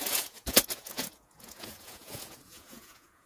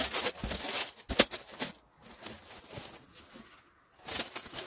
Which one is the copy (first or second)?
first